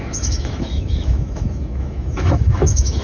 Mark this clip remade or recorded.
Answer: remade